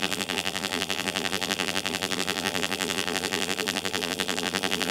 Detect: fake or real fake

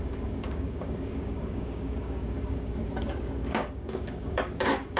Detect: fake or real fake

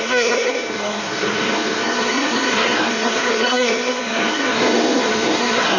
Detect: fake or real fake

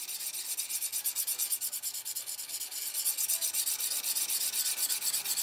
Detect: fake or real real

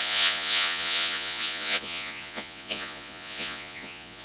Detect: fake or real fake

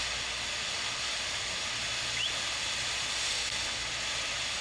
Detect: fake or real real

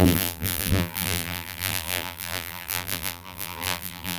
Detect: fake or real fake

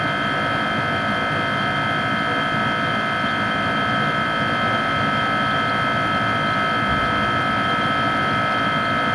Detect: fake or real real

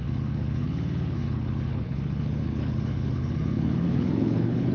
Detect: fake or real fake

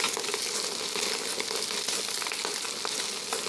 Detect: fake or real real